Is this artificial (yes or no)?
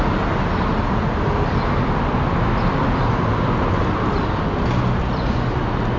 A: no